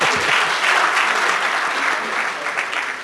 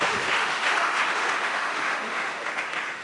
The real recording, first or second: first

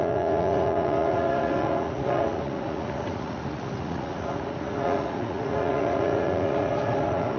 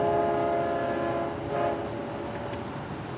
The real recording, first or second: second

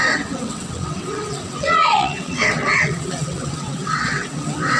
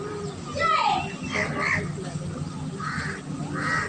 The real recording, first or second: second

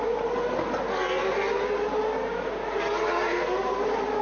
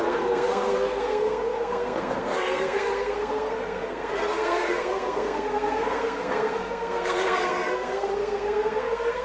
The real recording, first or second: first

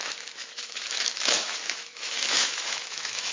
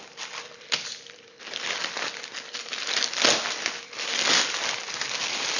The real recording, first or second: second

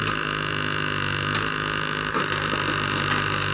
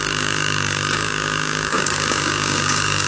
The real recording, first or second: first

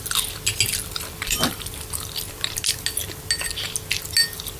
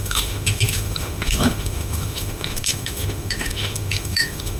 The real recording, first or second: first